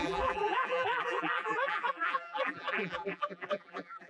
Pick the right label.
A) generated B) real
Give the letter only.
A